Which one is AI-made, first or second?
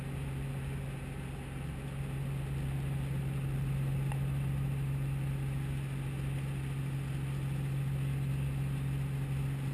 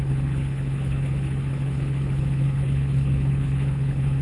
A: second